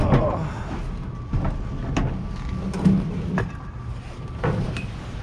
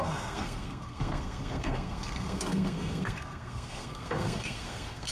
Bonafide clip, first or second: first